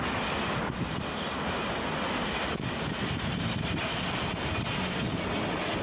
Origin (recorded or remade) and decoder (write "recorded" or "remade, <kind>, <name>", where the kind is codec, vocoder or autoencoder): recorded